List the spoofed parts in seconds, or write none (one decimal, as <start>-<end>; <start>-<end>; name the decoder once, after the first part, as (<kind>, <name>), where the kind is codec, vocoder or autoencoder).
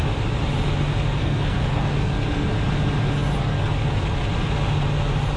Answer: 1.2-2.1 (codec, SNAC)